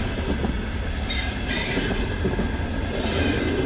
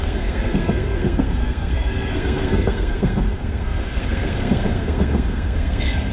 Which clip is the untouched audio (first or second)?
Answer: first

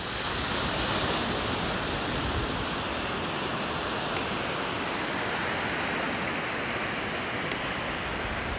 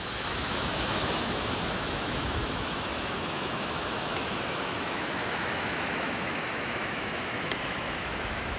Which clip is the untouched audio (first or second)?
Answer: first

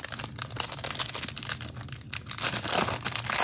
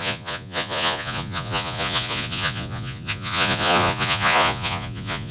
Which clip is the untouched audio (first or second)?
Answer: first